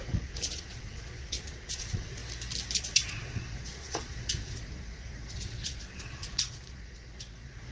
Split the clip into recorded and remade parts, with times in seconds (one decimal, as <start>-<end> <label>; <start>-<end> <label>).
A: 0.0-2.2 remade; 2.2-2.8 recorded; 2.8-7.7 remade